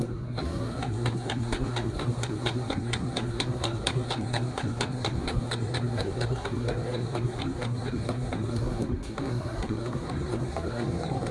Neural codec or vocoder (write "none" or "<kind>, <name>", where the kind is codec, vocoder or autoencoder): codec, SNAC